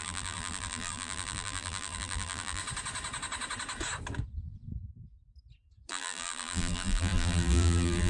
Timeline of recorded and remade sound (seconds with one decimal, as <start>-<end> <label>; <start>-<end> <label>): 0.0-2.6 remade; 2.6-5.9 recorded; 5.9-8.1 remade